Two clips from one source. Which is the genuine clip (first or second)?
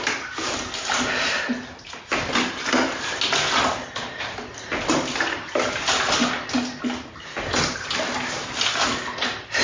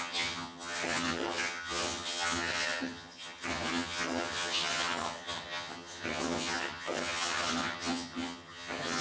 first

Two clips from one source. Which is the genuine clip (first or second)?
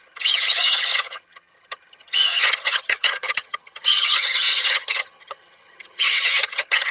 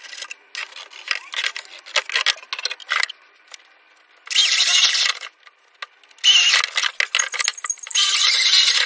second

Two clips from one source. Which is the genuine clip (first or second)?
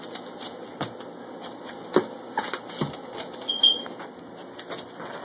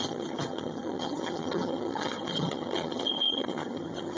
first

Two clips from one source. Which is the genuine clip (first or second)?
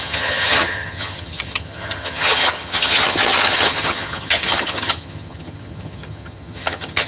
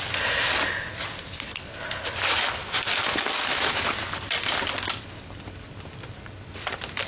second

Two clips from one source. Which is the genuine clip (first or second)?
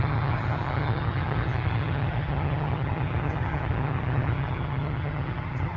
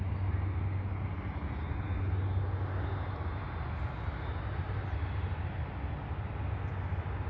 second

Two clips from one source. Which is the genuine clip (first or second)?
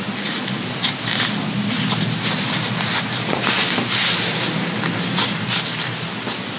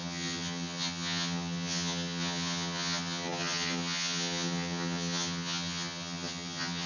first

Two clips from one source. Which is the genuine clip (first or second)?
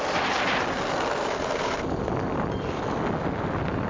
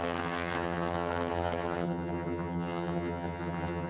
first